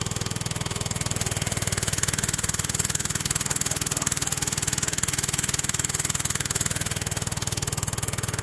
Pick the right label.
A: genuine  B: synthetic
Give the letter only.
B